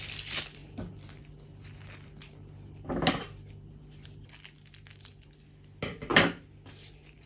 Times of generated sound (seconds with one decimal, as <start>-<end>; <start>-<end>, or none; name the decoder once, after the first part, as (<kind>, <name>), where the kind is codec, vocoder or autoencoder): none